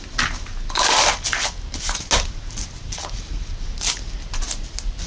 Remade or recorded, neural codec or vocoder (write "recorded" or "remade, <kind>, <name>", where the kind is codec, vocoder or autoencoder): recorded